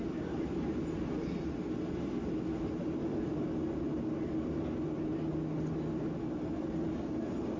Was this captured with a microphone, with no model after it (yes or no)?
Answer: yes